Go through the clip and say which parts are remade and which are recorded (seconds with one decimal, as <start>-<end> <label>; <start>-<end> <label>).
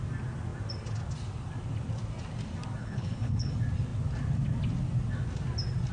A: 0.0-2.8 recorded; 2.8-3.5 remade; 3.5-5.9 recorded